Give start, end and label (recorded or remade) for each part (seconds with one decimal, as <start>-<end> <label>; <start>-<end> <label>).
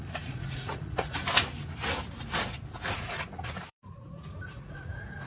0.0-1.2 remade; 1.2-2.9 recorded; 2.9-5.3 remade